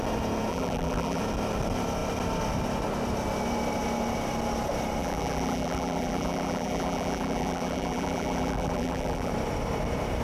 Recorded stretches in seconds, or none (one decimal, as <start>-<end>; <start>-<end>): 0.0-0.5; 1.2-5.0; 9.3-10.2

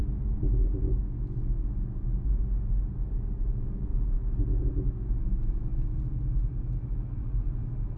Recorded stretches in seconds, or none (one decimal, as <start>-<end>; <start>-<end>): 0.0-8.0

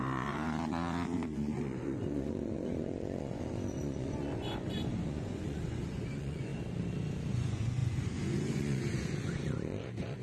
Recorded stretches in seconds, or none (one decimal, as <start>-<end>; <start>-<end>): 6.5-7.3

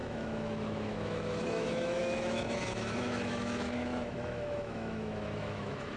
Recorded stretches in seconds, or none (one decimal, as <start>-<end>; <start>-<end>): none

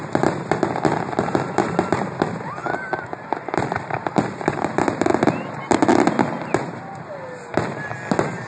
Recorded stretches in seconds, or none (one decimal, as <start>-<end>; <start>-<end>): 5.1-6.8; 7.5-8.5